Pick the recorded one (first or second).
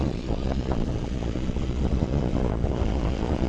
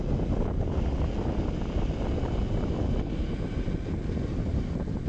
second